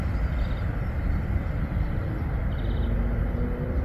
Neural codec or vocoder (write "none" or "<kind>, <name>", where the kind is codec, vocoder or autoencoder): none